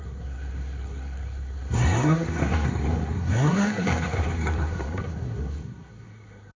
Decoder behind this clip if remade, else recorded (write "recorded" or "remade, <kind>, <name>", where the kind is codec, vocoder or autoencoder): remade, codec, SNAC